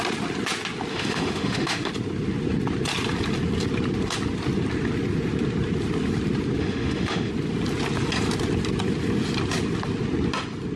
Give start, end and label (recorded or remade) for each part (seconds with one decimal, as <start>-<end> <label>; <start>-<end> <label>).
0.0-0.9 recorded; 0.9-1.9 remade; 1.9-6.6 recorded; 6.6-7.3 remade; 7.3-10.8 recorded